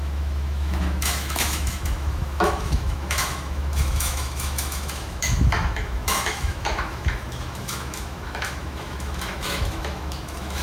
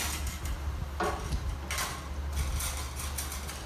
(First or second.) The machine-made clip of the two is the first